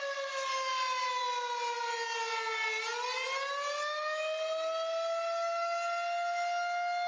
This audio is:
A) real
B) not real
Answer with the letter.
A